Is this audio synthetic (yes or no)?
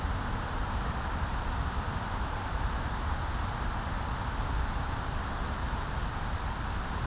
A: no